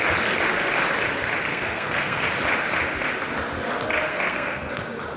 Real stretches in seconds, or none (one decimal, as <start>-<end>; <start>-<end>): 0.0-1.5; 2.3-4.1; 4.7-5.2